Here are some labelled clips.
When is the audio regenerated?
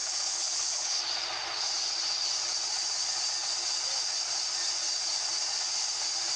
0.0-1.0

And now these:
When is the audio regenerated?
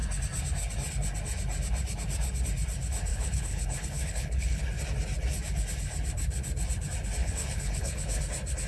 3.1-4.6; 7.2-8.2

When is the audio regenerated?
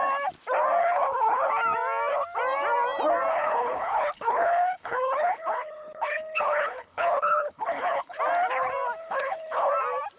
0.8-1.5; 3.3-8.2; 9.0-9.7